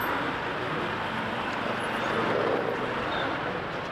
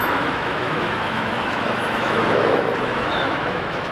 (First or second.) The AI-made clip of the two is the second